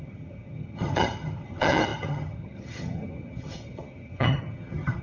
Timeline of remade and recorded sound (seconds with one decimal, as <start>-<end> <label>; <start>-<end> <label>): 0.0-5.0 remade